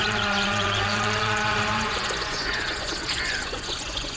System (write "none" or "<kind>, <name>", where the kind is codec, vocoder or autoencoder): vocoder, Vocos